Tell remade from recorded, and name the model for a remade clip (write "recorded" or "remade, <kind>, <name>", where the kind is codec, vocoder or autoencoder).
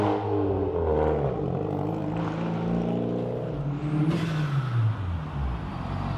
recorded